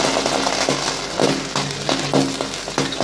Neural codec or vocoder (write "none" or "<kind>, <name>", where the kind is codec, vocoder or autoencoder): none